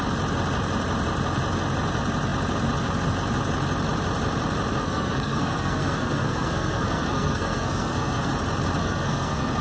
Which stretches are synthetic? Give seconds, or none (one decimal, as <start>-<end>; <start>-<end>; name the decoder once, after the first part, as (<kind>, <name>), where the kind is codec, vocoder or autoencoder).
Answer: 4.8-8.3 (codec, SNAC); 8.8-9.6